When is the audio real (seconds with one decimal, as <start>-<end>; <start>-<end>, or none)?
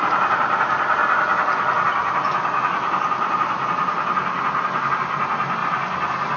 1.0-4.8; 5.6-6.4